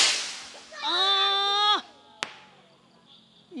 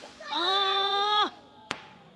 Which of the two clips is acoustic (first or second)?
first